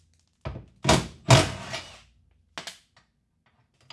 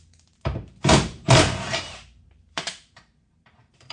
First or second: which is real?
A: first